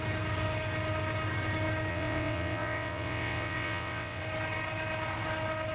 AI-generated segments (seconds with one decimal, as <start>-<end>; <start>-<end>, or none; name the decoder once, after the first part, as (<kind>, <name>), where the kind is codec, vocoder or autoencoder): 1.9-4.2 (vocoder, WaveNeXt)